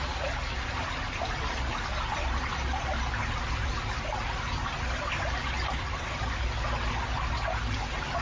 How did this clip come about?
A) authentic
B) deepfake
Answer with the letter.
A